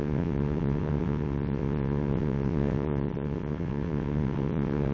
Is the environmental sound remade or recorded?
remade